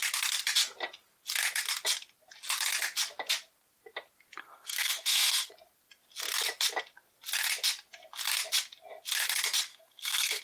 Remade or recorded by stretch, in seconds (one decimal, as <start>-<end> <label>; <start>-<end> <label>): 0.0-4.4 recorded; 4.4-5.5 remade; 5.5-9.7 recorded; 9.7-10.4 remade